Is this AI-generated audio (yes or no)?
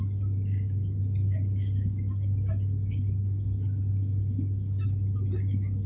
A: yes